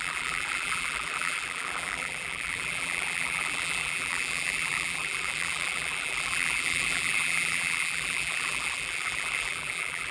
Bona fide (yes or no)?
no